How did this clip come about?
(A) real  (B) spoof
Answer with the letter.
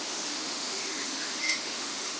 B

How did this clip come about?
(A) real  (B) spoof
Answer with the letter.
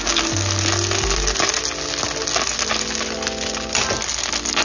A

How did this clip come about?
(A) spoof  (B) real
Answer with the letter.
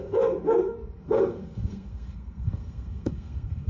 A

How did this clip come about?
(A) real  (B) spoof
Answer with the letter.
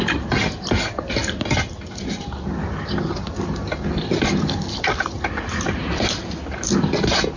A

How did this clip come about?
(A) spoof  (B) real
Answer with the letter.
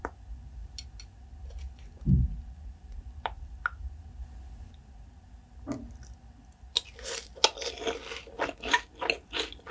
B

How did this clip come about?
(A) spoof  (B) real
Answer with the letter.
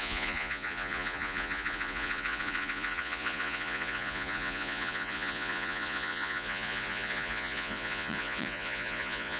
A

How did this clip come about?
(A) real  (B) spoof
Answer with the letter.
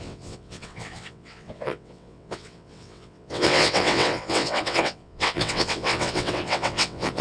B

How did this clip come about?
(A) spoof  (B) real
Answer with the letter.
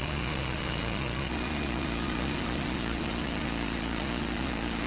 A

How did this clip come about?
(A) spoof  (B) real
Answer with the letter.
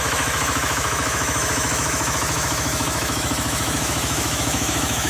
A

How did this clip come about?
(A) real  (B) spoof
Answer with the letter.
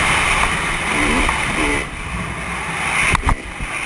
A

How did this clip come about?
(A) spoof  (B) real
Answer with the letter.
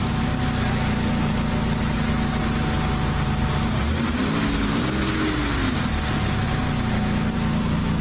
B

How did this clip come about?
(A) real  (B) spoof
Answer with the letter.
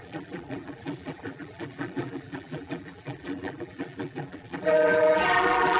B